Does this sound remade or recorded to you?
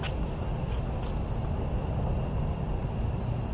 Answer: recorded